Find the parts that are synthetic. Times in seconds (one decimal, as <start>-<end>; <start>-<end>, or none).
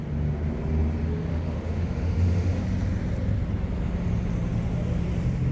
1.3-2.6